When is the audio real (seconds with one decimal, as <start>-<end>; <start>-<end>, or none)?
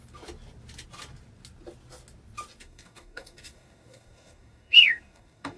0.0-2.6